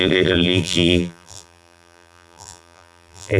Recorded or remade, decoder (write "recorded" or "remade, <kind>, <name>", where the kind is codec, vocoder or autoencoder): remade, vocoder, BigVGAN v2